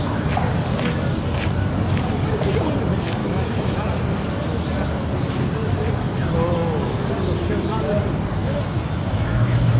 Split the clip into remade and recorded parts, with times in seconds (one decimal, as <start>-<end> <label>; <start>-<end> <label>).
0.0-3.2 recorded; 3.2-4.0 remade; 4.0-8.4 recorded; 8.4-9.8 remade